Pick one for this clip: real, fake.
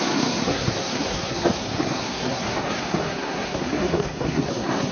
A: fake